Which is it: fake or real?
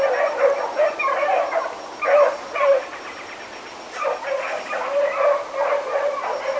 real